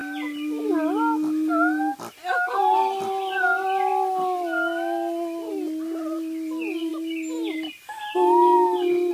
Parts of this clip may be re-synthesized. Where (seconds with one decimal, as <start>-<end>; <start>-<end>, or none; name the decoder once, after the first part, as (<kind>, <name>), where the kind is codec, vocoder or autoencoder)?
none